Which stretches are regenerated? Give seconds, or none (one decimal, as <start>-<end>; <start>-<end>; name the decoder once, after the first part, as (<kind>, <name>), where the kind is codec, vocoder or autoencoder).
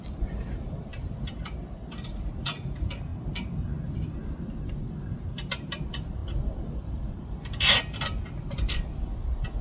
0.0-6.2 (vocoder, BigVGAN v2); 8.5-9.6